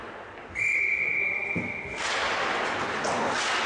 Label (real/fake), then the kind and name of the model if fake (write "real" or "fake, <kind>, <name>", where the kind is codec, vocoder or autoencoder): real